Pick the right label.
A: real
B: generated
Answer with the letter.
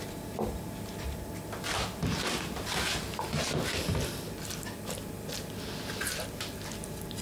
A